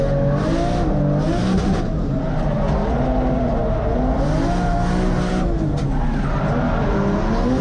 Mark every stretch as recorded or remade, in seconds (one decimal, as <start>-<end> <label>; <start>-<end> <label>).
0.0-1.4 recorded; 1.4-2.1 remade; 2.1-7.6 recorded